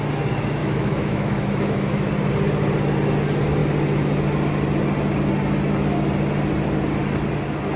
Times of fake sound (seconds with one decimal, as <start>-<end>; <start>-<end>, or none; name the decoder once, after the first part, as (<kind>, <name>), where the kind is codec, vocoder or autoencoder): 0.6-2.1 (autoencoder, DAC-VAE)